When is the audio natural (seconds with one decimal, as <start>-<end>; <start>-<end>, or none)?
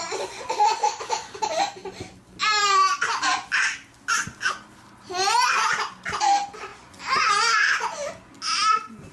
0.0-0.8; 1.4-9.1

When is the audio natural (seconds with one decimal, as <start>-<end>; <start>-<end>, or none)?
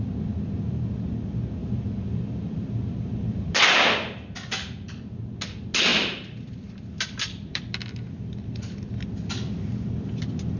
0.0-1.6; 5.2-5.9; 9.0-10.6